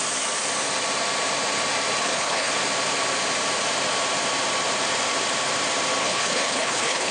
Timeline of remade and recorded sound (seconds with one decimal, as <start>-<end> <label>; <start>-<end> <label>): 0.0-2.0 recorded; 2.0-2.5 remade; 2.5-6.0 recorded; 6.0-7.1 remade